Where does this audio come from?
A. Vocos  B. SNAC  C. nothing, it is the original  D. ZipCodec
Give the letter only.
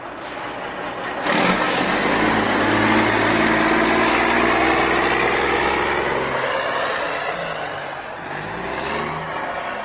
C